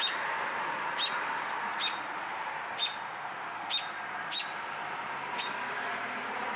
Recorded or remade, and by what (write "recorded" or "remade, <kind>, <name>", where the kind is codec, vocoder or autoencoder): recorded